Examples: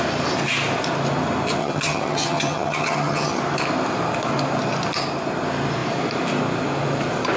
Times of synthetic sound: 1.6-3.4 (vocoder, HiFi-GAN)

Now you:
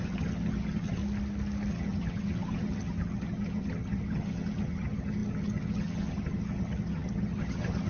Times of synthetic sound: 0.0-1.0 (vocoder, HiFi-GAN); 1.7-7.9

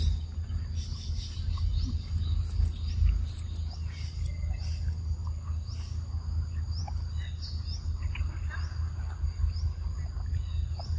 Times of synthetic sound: none

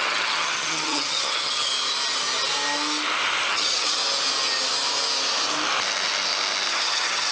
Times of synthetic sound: 0.0-1.7 (vocoder, HiFi-GAN); 3.5-4.0; 6.7-7.3

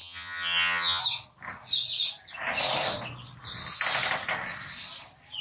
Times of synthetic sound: 0.0-1.0 (vocoder, HiFi-GAN)

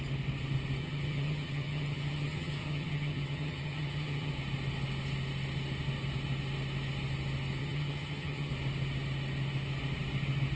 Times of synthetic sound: 0.8-4.3 (vocoder, HiFi-GAN); 7.6-8.5